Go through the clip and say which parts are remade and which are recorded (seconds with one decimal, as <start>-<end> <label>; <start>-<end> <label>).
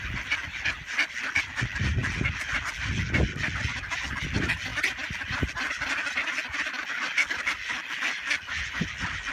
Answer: 0.0-9.3 recorded